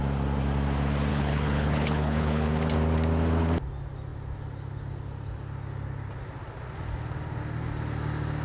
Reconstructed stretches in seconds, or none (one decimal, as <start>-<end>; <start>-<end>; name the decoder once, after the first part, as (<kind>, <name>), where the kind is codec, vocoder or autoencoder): 1.1-2.5 (codec, HILCodec)